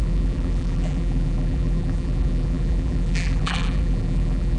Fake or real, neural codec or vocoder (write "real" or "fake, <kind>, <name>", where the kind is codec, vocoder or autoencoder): fake, vocoder, BigVGAN v2